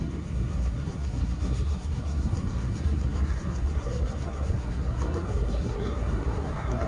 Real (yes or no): no